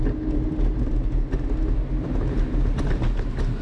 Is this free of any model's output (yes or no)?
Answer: yes